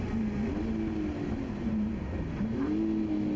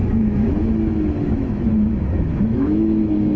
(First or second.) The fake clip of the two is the second